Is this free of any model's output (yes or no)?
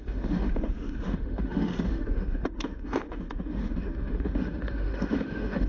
no